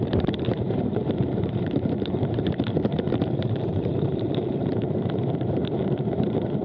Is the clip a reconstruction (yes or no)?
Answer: yes